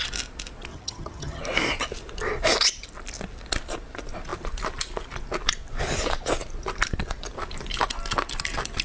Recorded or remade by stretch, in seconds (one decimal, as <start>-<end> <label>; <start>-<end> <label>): 0.0-0.7 recorded; 0.7-1.4 remade; 1.4-8.8 recorded